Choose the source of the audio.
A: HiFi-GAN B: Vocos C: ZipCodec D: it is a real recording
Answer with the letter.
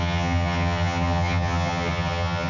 A